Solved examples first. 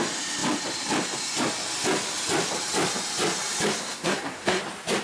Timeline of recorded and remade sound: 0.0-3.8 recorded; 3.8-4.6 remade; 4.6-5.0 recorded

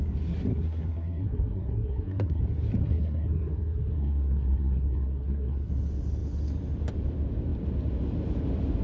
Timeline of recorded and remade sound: 0.0-0.5 recorded; 0.5-2.4 remade; 2.4-2.8 recorded; 2.8-5.7 remade; 5.7-8.8 recorded

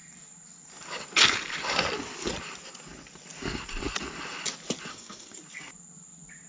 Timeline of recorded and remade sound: 0.0-4.9 recorded; 4.9-5.4 remade; 5.4-6.5 recorded